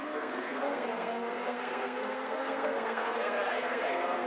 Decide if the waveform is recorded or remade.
remade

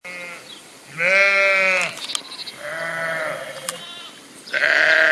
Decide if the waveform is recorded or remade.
recorded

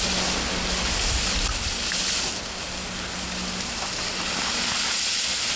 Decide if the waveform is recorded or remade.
recorded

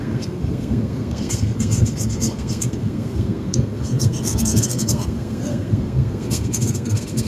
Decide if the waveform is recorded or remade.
remade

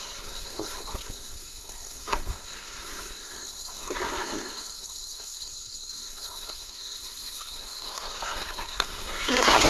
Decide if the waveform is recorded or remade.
remade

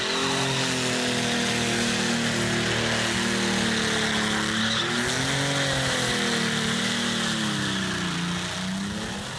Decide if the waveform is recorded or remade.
recorded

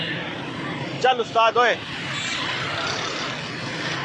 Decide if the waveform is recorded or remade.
recorded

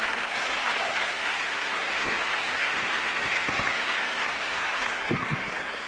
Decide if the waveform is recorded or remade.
remade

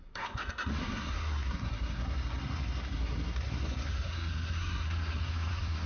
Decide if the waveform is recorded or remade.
remade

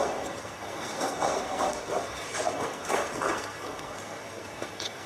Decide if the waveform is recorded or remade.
remade